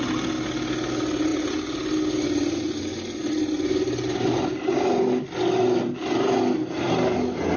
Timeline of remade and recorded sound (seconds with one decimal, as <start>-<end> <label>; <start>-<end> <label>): 0.0-7.6 recorded